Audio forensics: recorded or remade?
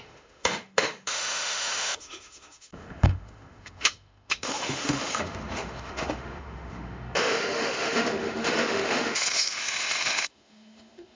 remade